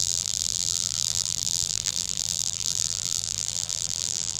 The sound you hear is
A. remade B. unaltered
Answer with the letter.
A